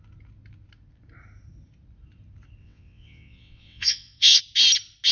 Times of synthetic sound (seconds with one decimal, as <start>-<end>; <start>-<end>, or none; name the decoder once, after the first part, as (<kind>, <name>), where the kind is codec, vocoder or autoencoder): 2.6-4.4 (vocoder, WaveNeXt)